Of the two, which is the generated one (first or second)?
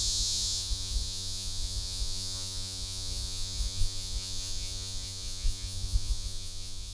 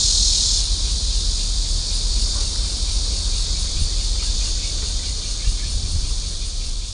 first